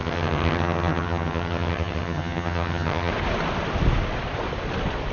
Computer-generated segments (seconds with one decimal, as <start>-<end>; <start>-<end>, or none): 0.0-3.1

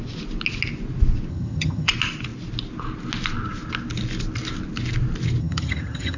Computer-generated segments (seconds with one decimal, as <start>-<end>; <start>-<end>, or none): 1.3-1.9; 5.4-6.2

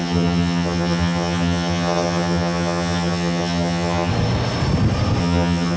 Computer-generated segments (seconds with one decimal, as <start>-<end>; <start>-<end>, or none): 0.0-4.1; 5.2-5.8